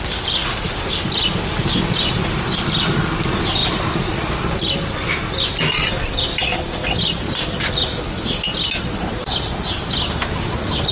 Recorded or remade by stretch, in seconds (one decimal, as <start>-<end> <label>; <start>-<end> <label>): 0.0-10.9 recorded